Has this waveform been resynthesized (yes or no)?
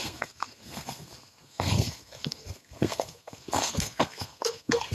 yes